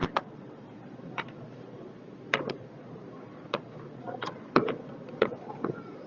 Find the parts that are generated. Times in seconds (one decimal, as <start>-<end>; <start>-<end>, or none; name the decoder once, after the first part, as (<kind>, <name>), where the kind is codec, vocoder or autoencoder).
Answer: 0.0-6.1 (vocoder, Vocos)